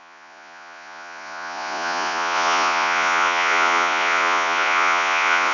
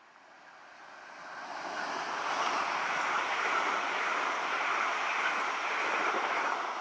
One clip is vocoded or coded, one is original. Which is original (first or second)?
second